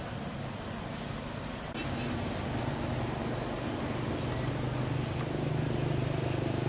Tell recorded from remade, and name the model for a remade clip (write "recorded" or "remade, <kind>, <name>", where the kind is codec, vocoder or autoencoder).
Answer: recorded